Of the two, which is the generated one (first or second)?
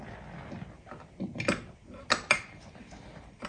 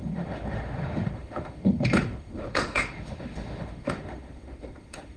second